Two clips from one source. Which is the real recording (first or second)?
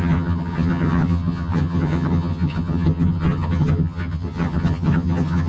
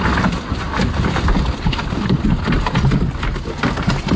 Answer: second